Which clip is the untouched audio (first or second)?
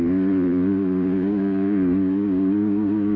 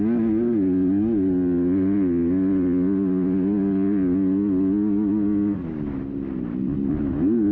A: second